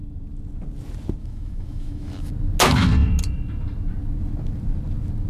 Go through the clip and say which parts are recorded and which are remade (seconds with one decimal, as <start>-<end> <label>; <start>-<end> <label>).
0.0-1.2 recorded; 1.2-2.3 remade; 2.3-5.3 recorded